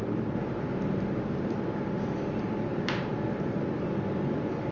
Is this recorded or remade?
recorded